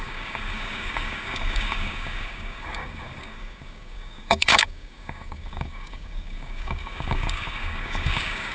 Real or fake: fake